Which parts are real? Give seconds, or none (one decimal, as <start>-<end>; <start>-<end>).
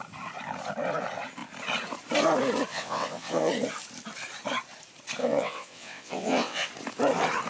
0.0-2.7; 3.5-5.2; 6.7-7.5